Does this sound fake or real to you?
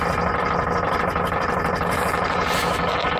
real